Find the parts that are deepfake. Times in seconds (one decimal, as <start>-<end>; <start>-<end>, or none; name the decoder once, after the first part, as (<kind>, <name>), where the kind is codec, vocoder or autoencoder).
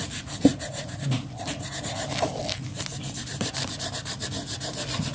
0.5-2.1 (vocoder, BigVGAN v2); 2.9-3.7